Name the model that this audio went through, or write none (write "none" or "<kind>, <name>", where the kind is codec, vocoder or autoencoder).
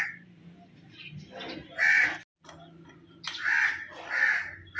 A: none